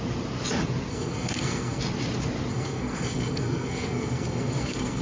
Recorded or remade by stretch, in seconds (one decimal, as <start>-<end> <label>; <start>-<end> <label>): 0.0-0.9 recorded; 0.9-1.8 remade; 1.8-2.5 recorded; 2.5-5.0 remade